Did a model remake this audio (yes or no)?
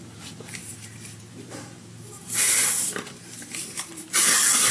yes